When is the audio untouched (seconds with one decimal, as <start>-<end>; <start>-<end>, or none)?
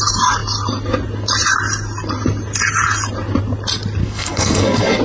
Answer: 0.0-4.0